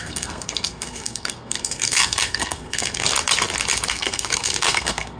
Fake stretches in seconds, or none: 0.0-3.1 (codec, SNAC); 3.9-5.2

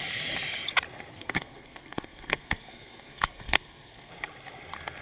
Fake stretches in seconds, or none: 1.1-4.1 (codec, SNAC)